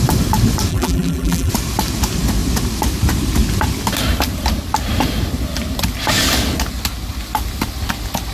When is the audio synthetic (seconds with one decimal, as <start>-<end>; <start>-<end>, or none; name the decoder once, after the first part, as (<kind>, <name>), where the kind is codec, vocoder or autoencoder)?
0.7-1.5 (vocoder, BigVGAN v2)